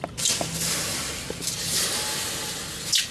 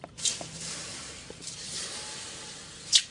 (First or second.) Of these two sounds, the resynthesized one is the second